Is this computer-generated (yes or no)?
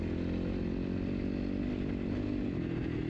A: no